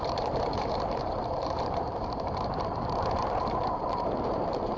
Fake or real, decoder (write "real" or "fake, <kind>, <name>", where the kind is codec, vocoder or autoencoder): fake, vocoder, BigVGAN v2